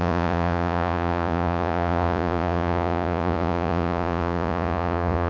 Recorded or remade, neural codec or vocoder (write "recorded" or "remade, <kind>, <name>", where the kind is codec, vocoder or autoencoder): remade, vocoder, Vocos